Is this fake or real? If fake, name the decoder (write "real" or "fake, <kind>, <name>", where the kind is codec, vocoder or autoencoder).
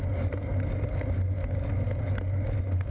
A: real